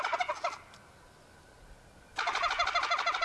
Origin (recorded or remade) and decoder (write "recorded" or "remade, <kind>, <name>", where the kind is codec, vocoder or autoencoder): recorded